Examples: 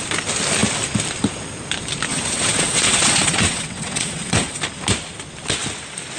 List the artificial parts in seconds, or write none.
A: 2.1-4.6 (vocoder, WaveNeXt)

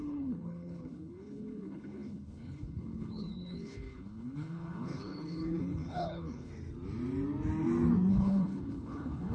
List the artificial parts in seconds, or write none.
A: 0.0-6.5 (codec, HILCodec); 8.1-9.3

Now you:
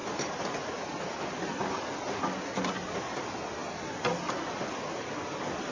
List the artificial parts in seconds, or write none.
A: none

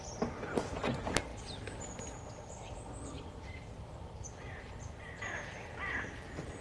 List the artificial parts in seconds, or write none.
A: none